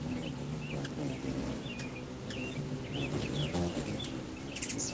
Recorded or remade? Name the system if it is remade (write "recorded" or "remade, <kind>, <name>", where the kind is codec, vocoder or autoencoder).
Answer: recorded